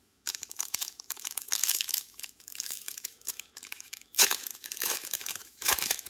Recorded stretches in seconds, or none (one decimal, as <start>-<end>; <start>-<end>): none